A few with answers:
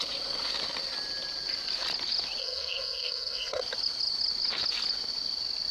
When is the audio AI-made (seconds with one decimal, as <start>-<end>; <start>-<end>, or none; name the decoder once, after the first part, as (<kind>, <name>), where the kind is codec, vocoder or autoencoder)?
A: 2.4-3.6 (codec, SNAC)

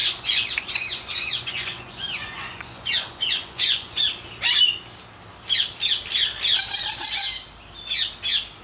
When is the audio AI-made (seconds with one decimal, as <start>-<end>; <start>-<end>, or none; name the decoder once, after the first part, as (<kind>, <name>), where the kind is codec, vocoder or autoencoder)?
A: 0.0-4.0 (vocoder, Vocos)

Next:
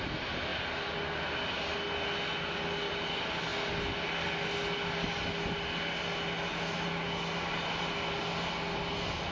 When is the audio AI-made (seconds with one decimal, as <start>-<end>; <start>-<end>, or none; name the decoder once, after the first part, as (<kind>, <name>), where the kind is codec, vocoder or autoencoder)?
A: none

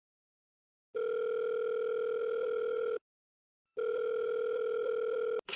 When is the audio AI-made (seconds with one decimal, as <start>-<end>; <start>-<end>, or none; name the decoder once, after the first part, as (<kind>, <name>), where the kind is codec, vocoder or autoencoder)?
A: 2.2-3.2 (vocoder, BigVGAN v2); 3.9-4.9

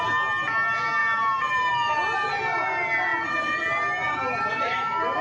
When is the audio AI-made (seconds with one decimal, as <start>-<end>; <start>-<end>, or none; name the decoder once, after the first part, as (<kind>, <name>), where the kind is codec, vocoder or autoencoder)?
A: none

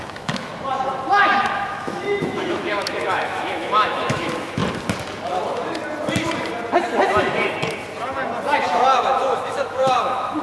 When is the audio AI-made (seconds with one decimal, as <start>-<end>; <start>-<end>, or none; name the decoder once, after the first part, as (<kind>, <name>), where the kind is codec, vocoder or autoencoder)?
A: 0.0-0.5 (autoencoder, DAC-VAE); 1.4-4.6; 8.6-10.4